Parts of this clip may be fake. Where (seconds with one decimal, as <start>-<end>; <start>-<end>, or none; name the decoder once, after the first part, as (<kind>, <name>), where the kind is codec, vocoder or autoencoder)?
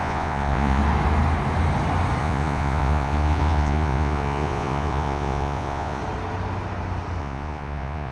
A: 0.0-0.8 (vocoder, Vocos); 2.2-6.0; 7.2-8.1